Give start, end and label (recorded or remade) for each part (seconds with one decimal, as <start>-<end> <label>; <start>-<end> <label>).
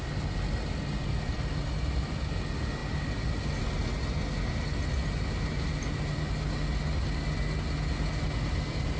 0.0-9.0 recorded